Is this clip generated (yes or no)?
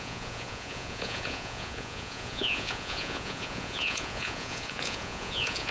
yes